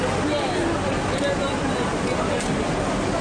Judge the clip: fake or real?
real